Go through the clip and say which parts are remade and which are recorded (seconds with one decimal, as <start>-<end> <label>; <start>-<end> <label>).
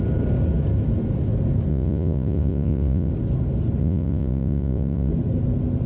0.0-1.7 recorded; 1.7-3.1 remade; 3.1-3.8 recorded; 3.8-5.1 remade; 5.1-5.9 recorded